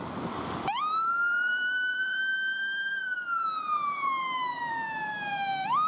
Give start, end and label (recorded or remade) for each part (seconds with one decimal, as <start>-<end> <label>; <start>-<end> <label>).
0.0-5.9 remade